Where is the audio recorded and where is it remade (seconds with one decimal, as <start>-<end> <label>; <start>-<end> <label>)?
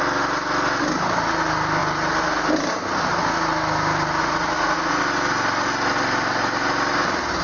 0.0-4.2 recorded; 4.2-5.0 remade; 5.0-7.4 recorded